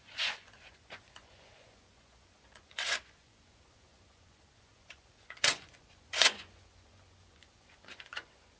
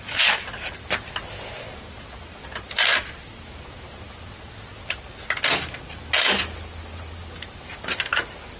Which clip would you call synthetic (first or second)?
first